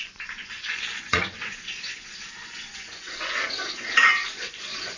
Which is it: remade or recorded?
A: remade